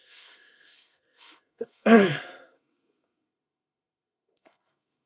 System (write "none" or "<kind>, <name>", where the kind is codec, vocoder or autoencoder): codec, SNAC